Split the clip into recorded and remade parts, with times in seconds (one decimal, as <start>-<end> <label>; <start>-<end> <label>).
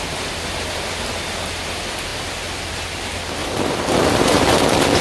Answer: 0.0-3.4 recorded; 3.4-4.6 remade; 4.6-5.0 recorded